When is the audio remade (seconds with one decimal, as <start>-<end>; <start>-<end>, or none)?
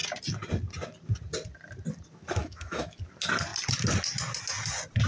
2.4-3.0